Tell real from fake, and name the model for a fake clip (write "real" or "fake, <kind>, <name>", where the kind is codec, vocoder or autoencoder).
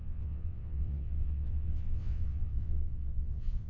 fake, vocoder, WaveNeXt